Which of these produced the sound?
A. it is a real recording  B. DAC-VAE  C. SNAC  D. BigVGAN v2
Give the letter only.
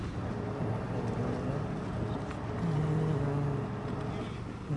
A